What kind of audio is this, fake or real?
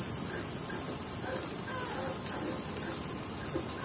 real